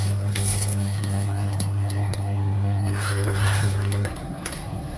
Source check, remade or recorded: remade